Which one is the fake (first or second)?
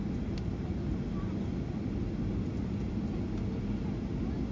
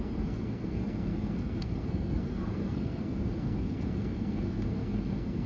second